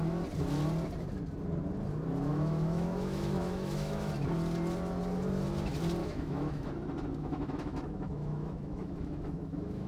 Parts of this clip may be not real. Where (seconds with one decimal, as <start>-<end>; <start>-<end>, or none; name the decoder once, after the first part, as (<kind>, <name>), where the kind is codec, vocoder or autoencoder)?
2.3-4.1 (autoencoder, DAC-VAE); 6.0-6.7; 7.2-9.9